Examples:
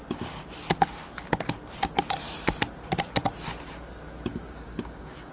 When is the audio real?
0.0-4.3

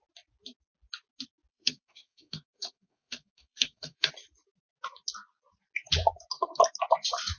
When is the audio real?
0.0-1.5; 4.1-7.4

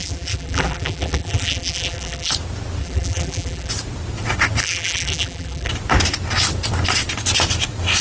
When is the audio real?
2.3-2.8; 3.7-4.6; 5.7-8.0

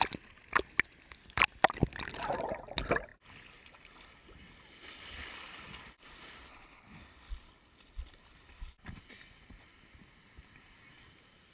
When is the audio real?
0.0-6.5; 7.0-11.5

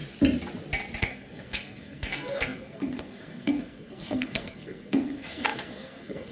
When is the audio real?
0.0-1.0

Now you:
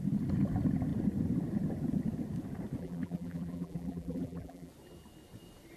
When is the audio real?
0.0-2.8; 4.7-5.8

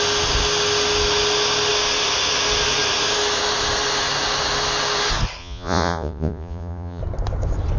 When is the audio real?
0.0-5.4; 7.0-7.8

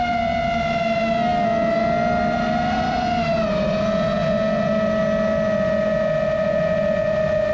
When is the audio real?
0.0-7.5